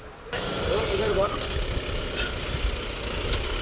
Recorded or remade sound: recorded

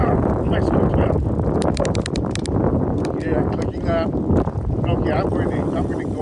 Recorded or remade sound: remade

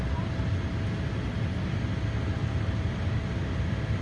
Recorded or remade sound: recorded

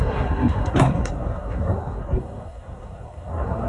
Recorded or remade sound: remade